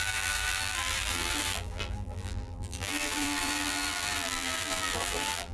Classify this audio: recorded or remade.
remade